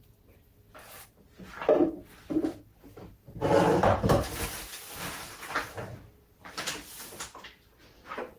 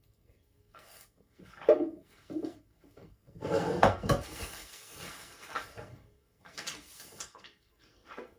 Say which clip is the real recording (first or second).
first